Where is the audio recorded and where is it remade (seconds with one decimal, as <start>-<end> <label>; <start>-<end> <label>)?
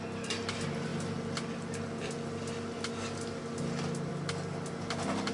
0.0-5.3 recorded